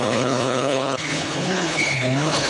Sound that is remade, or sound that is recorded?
remade